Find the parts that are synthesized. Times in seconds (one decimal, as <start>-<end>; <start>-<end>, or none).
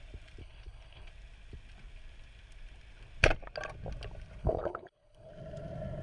0.4-1.1; 4.4-5.3